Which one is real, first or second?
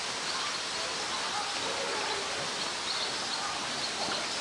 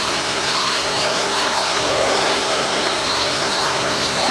first